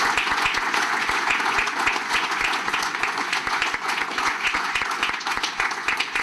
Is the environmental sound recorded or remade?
remade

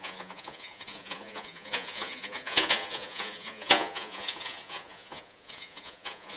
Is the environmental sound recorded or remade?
remade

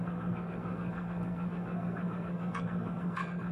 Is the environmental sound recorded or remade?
remade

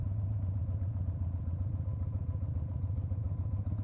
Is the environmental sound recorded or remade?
remade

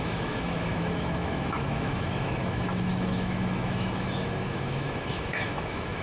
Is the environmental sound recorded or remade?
remade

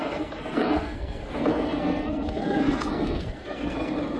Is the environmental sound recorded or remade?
remade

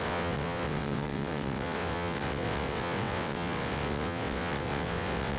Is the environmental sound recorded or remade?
remade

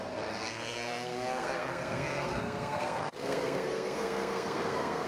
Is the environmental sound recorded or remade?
remade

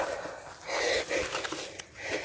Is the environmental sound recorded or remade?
recorded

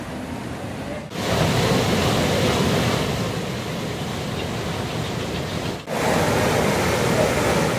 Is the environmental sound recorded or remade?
recorded